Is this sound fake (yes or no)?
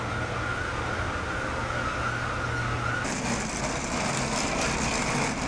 no